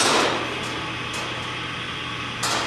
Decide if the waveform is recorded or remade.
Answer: recorded